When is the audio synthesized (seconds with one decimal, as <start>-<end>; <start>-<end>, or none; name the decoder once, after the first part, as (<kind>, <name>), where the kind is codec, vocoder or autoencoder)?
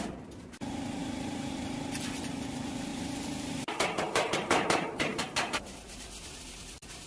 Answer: 1.0-2.1 (vocoder, BigVGAN v2); 2.9-5.6